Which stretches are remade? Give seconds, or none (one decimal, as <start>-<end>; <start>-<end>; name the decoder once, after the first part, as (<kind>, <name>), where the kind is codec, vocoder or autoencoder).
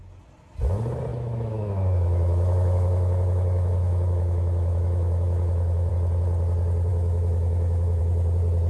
1.1-5.9 (autoencoder, DAC-VAE); 6.9-8.0